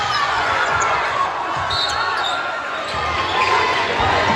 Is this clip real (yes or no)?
no